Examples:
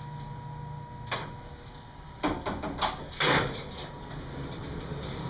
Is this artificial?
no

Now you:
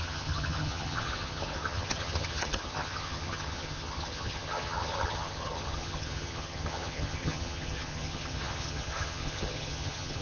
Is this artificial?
yes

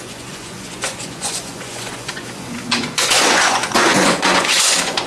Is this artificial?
yes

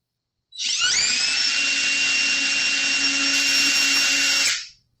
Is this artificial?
yes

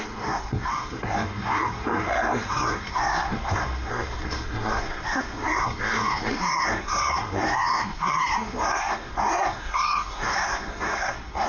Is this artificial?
yes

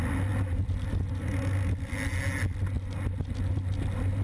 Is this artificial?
no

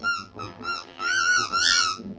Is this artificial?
yes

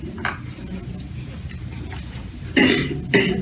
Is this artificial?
no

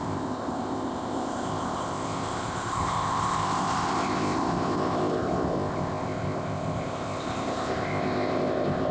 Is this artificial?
yes